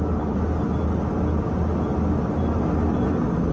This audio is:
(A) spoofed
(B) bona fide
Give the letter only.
B